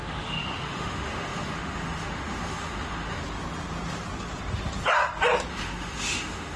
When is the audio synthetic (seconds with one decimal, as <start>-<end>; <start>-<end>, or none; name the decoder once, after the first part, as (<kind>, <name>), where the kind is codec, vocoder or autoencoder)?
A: 0.0-3.2 (autoencoder, DAC-VAE); 5.5-6.6